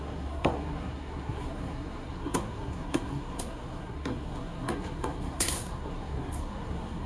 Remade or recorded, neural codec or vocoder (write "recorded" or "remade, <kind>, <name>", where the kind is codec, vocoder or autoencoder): remade, codec, SNAC